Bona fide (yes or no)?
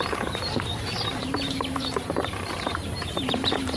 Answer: no